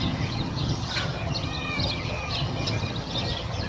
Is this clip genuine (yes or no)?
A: no